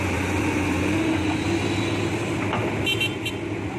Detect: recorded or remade recorded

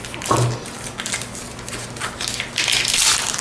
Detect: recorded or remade recorded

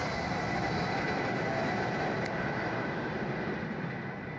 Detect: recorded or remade recorded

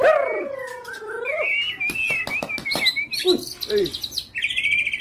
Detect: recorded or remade recorded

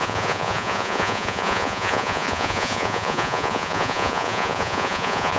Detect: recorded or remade remade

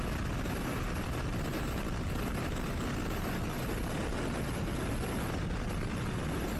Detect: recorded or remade recorded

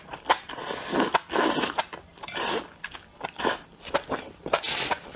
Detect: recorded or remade recorded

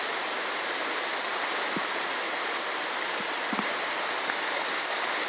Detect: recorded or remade recorded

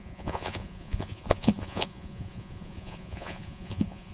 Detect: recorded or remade remade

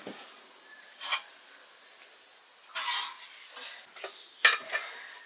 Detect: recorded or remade recorded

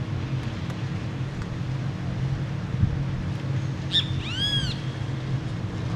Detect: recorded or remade recorded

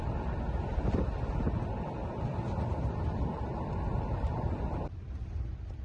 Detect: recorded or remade recorded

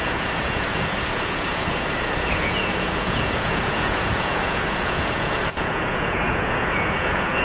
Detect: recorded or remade remade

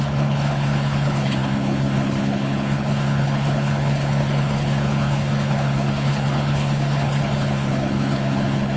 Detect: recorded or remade remade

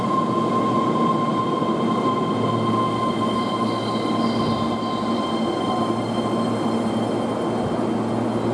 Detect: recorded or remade recorded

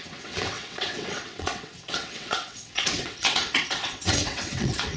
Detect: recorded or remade remade